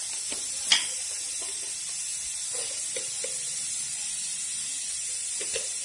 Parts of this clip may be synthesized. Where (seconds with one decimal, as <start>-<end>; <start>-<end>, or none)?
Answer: none